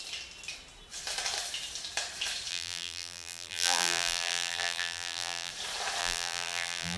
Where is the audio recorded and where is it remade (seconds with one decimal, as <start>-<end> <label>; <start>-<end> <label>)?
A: 0.0-2.5 recorded; 2.5-5.5 remade; 5.5-6.0 recorded; 6.0-7.0 remade